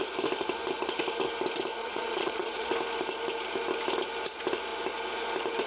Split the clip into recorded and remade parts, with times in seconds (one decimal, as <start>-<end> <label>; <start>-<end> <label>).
0.0-1.8 recorded; 1.8-2.7 remade; 2.7-5.7 recorded